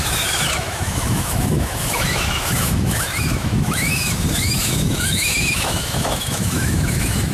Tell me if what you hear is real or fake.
fake